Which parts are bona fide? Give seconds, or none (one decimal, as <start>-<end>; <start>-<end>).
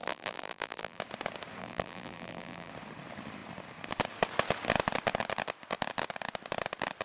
1.0-1.6; 2.7-7.0